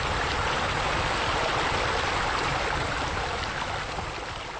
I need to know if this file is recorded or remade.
recorded